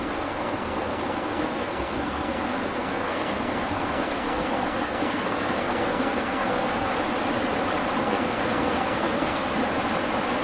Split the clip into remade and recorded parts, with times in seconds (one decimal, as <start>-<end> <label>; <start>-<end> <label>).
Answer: 0.0-6.9 remade; 6.9-8.0 recorded; 8.0-9.6 remade; 9.6-10.4 recorded